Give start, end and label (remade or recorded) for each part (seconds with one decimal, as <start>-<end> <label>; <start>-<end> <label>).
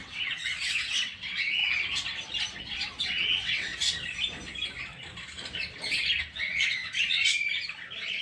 0.0-1.6 remade; 1.6-2.6 recorded; 2.6-3.7 remade; 3.7-6.3 recorded; 6.3-7.2 remade; 7.2-8.2 recorded